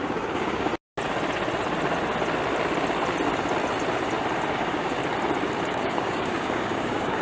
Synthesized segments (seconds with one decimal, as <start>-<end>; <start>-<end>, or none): 0.0-0.7; 4.5-5.0; 5.7-7.2